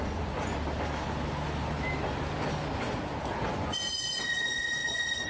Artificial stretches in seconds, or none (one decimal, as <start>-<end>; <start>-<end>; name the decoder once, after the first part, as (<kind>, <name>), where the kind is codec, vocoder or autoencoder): 0.0-0.5 (vocoder, Vocos); 3.5-5.3